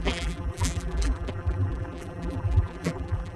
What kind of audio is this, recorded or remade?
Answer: remade